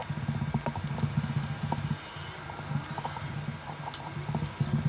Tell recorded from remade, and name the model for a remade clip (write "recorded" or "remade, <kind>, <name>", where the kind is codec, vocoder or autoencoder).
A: recorded